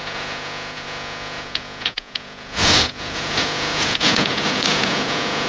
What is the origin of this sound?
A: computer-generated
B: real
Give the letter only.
A